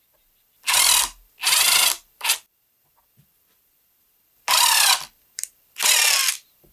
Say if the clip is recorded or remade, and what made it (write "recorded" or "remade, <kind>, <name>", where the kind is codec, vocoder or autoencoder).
recorded